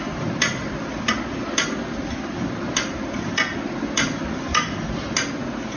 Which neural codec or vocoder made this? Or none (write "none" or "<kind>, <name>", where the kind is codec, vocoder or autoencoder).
none